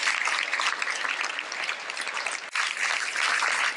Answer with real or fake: real